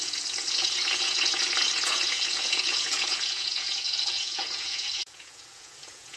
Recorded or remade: remade